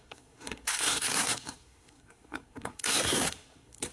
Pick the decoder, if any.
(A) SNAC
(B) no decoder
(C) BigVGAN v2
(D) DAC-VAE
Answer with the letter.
A